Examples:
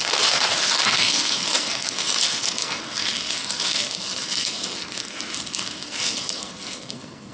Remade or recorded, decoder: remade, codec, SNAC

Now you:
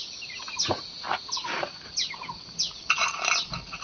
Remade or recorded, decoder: recorded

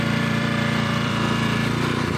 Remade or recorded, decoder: remade, vocoder, BigVGAN v2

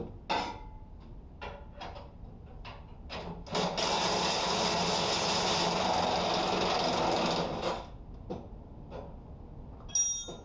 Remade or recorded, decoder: recorded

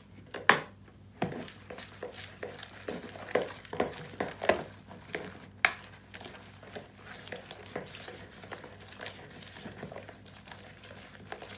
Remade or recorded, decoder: recorded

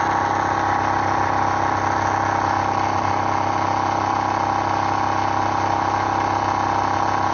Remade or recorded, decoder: recorded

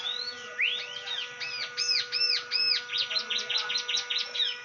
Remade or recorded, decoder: recorded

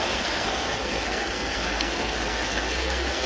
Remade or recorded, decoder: remade, codec, SNAC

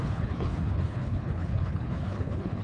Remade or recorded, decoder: remade, codec, HILCodec